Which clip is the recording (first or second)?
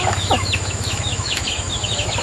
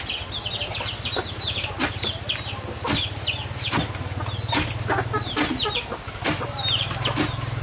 second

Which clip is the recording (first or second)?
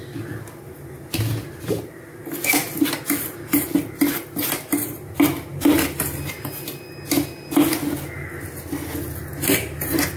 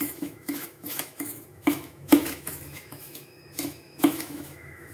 first